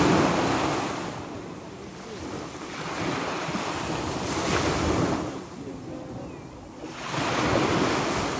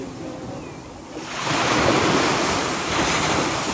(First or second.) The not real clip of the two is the second